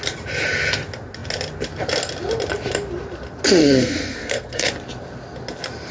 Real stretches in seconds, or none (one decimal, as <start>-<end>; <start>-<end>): 0.0-3.6; 4.7-5.9